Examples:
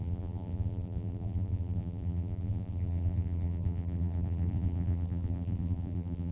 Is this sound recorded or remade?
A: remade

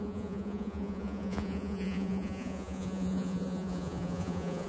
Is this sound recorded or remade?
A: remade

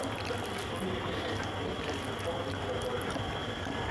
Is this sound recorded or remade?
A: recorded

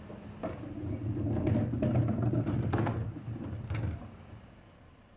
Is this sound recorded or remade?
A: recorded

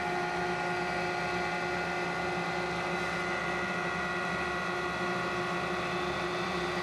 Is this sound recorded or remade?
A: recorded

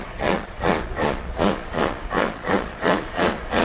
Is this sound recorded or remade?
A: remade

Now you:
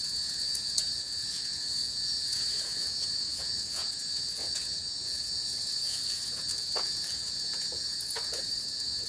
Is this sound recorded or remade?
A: remade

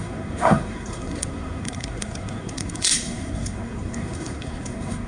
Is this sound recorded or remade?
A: remade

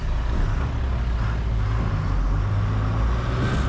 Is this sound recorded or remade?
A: recorded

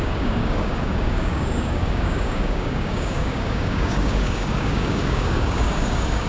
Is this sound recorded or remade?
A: remade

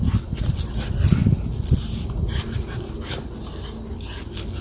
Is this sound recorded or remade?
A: recorded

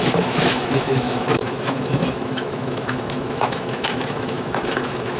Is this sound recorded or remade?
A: remade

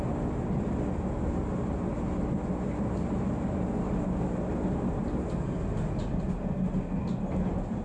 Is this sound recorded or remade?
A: recorded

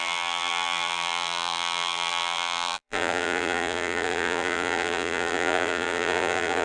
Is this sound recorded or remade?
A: remade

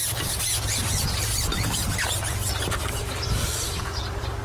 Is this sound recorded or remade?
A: remade